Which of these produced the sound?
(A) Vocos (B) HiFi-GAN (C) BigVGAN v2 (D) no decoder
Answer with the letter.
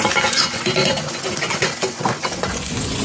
A